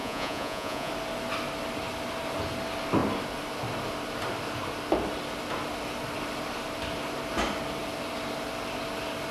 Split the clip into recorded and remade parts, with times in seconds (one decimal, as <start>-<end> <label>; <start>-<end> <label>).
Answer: 0.0-0.9 remade; 0.9-9.3 recorded

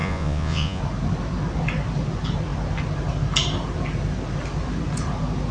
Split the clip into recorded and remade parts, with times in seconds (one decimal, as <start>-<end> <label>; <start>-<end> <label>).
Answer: 0.0-0.8 remade; 0.8-5.5 recorded

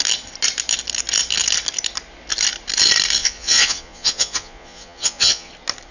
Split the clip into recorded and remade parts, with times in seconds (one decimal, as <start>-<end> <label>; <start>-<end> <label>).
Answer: 0.0-3.2 recorded; 3.2-5.5 remade; 5.5-5.9 recorded

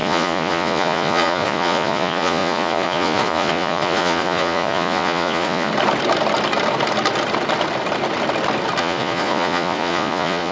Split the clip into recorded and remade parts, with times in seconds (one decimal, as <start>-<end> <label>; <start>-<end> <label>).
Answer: 0.0-5.7 remade; 5.7-8.8 recorded; 8.8-10.5 remade

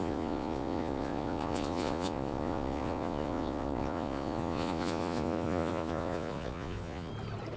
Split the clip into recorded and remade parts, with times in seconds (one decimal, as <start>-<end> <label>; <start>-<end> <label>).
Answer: 0.0-7.1 remade; 7.1-7.6 recorded